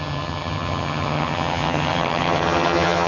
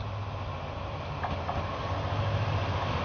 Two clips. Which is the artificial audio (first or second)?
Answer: first